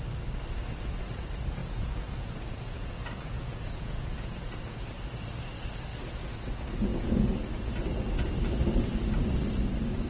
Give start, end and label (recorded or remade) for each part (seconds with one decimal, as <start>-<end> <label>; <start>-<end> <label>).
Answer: 0.0-1.6 recorded; 1.6-4.6 remade; 4.6-6.9 recorded; 6.9-7.4 remade; 7.4-10.1 recorded